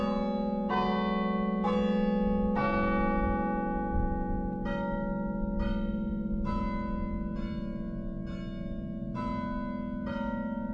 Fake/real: real